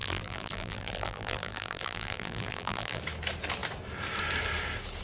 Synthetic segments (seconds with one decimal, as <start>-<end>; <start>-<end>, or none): 0.0-3.0